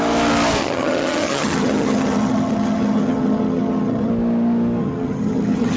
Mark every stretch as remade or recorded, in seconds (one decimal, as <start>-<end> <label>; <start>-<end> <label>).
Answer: 0.0-0.6 recorded; 0.6-4.1 remade; 4.1-4.8 recorded; 4.8-5.8 remade